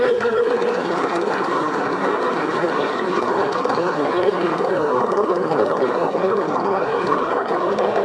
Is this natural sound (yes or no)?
no